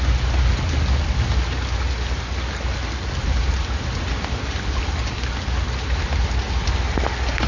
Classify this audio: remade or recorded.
recorded